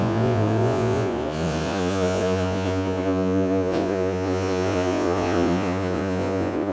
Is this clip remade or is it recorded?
remade